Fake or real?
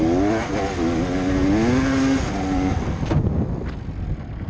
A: real